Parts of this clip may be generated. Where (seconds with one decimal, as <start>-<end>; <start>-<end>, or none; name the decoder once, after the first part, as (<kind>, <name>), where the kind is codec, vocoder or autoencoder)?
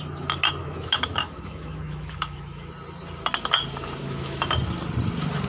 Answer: 0.6-2.7 (autoencoder, DAC-VAE); 4.0-4.5